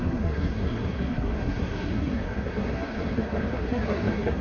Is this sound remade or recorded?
remade